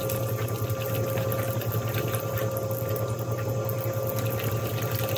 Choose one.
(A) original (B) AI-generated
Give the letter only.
A